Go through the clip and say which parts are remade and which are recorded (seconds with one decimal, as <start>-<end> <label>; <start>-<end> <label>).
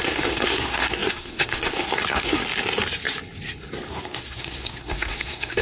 0.0-2.4 remade; 2.4-3.9 recorded; 3.9-5.6 remade